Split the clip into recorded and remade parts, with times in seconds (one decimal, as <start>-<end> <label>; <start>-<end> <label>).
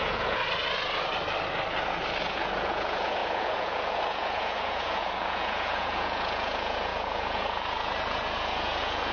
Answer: 0.0-0.4 remade; 0.4-2.2 recorded; 2.2-9.1 remade